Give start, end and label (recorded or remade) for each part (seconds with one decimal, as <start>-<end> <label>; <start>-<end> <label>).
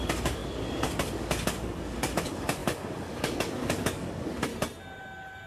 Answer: 0.0-4.5 remade; 4.5-5.5 recorded